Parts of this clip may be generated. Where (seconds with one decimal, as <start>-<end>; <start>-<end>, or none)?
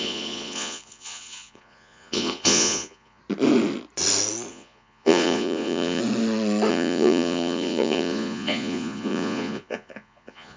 0.0-3.2; 4.5-6.0; 6.7-10.6